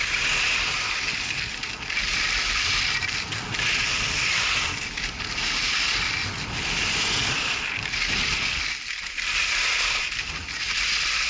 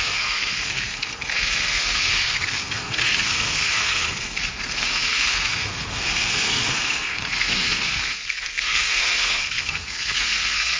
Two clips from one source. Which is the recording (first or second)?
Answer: first